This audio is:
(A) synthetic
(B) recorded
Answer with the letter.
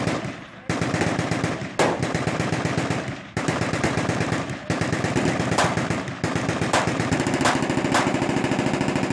B